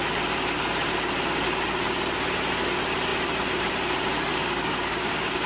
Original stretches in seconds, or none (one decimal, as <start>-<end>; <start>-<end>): 0.0-4.3